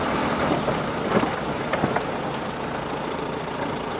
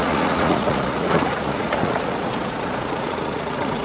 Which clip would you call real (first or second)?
first